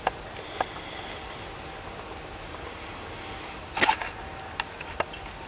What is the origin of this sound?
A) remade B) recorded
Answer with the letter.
B